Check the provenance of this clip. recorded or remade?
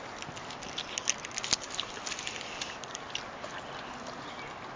recorded